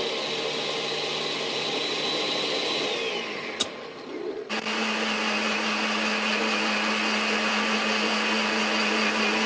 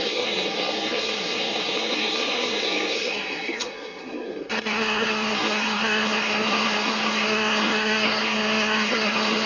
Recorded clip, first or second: first